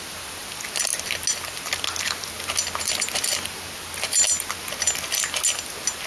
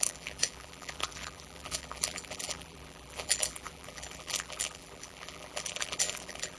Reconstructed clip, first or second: second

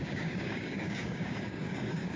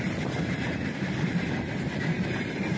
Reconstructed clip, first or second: first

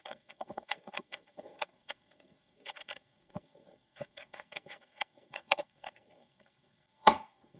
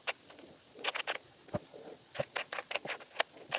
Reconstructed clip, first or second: first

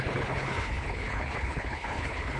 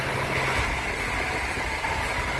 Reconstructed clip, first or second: first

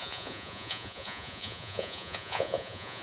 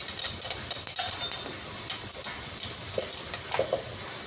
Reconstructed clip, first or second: first